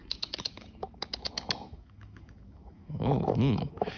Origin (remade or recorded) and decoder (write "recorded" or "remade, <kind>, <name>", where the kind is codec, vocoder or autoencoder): remade, autoencoder, DAC-VAE